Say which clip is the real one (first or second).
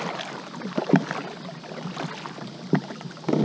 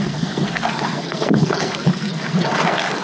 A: first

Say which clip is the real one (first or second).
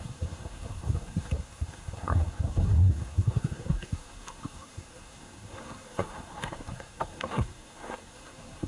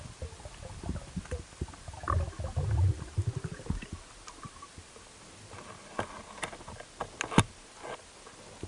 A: second